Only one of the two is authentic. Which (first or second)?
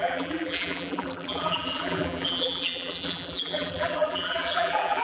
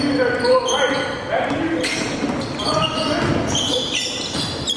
second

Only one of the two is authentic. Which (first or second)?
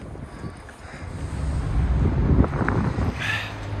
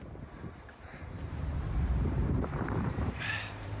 first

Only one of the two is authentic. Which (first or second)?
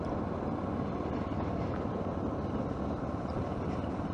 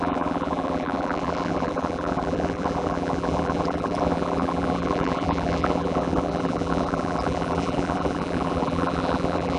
first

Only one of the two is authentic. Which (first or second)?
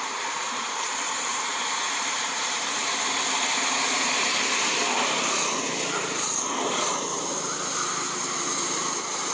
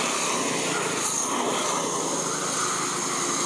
second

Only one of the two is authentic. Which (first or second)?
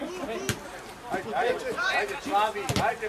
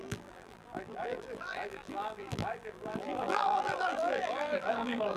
first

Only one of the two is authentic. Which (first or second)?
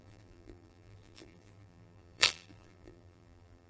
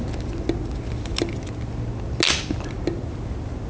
second